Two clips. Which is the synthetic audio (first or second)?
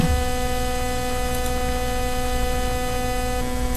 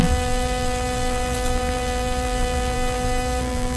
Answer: second